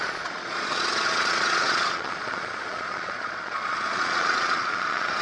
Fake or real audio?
fake